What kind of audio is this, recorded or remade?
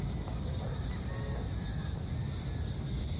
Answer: recorded